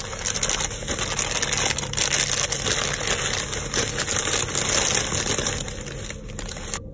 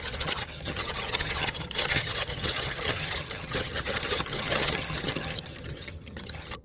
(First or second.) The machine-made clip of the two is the second